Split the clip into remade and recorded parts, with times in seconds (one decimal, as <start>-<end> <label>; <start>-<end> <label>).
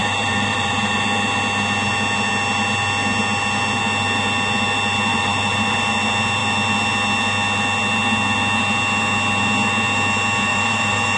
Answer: 0.0-1.0 remade; 1.0-5.1 recorded; 5.1-5.9 remade; 5.9-10.5 recorded; 10.5-11.2 remade